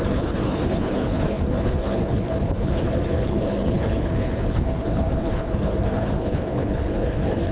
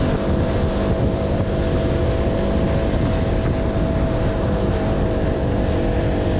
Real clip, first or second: second